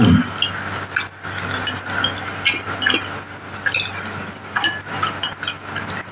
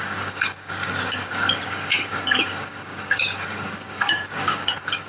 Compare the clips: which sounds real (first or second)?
first